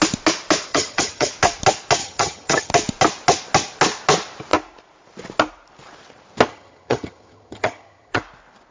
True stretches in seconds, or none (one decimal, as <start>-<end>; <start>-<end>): 0.0-0.7; 1.3-2.0; 2.7-6.5; 8.2-8.7